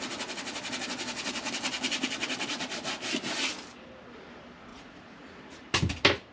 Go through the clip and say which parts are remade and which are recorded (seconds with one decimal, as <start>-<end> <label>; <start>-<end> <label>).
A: 0.0-4.7 recorded; 4.7-5.7 remade; 5.7-6.3 recorded